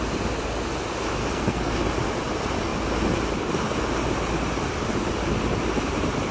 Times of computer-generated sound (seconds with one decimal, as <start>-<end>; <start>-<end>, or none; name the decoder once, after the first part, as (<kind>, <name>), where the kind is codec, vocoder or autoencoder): 1.2-1.7 (codec, SNAC)